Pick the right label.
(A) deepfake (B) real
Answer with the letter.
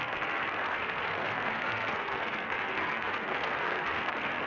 A